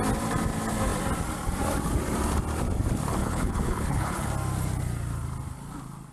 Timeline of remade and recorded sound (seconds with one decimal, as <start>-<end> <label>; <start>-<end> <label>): 0.0-3.2 recorded; 3.2-4.3 remade; 4.3-6.1 recorded